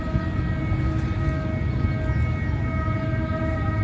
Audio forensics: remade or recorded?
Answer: recorded